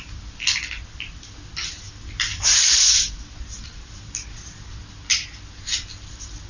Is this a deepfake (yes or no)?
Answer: no